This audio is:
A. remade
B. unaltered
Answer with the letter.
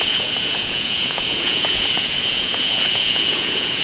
A